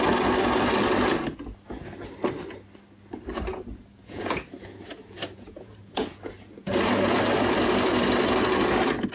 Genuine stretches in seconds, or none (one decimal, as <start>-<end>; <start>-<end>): 0.0-3.5; 7.2-9.1